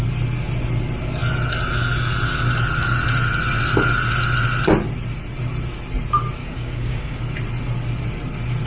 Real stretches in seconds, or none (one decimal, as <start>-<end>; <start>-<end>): 0.0-6.4; 7.2-8.7